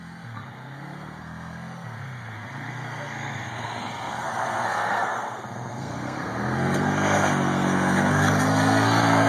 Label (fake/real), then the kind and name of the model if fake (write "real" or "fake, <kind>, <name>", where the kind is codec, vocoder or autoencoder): fake, codec, SNAC